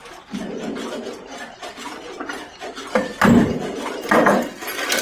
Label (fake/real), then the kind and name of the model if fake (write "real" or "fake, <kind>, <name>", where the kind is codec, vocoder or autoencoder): real